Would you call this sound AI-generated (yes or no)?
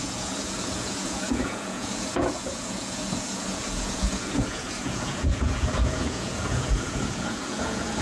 yes